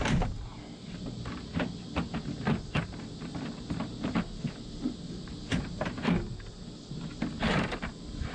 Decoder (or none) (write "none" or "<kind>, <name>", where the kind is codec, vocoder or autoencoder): none